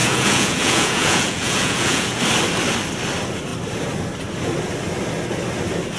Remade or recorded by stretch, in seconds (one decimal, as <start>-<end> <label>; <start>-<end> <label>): 0.0-2.2 remade; 2.2-6.0 recorded